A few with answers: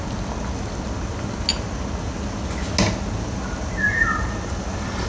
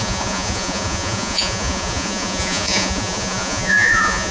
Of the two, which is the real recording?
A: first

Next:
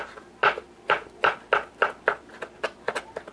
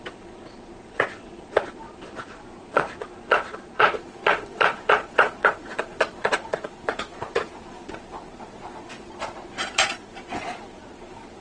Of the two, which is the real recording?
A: first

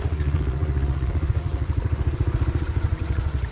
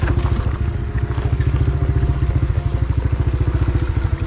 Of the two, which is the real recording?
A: second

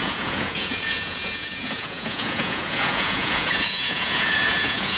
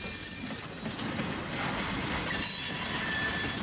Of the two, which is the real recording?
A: second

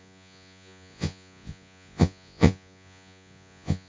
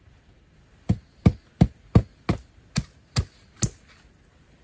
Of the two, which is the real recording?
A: second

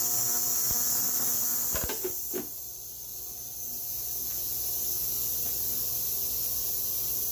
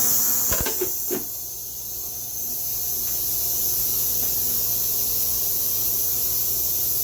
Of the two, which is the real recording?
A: first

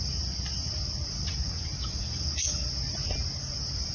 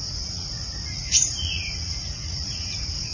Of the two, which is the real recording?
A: first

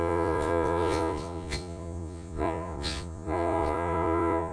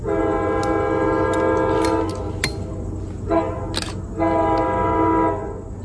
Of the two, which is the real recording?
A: second